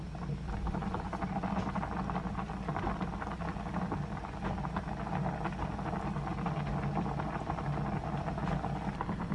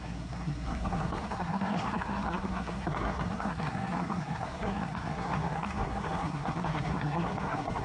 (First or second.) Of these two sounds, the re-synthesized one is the second